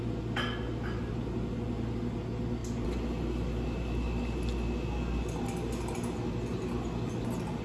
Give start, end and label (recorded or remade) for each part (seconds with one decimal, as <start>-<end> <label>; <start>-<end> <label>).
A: 0.0-7.6 recorded